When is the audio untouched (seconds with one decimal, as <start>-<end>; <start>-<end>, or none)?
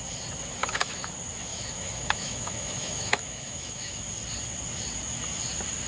0.0-0.6; 1.1-1.5; 4.0-5.9